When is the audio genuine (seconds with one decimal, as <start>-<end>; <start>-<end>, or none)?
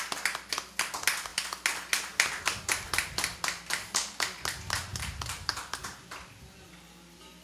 0.0-4.9; 6.4-7.4